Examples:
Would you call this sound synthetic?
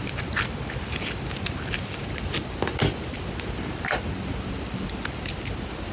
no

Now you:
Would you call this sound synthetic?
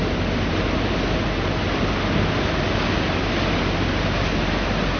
no